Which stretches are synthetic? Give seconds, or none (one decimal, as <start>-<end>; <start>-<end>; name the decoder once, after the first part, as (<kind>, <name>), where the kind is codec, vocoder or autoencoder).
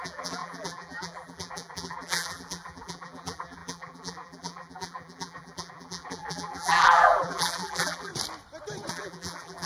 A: 0.0-8.1 (vocoder, BigVGAN v2); 8.9-9.7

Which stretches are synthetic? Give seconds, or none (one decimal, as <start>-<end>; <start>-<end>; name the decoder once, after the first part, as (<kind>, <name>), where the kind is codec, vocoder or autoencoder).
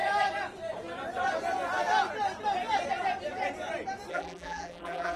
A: 4.1-5.2 (vocoder, BigVGAN v2)